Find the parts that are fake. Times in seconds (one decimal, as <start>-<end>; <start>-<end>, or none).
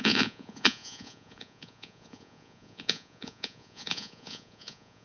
0.0-5.0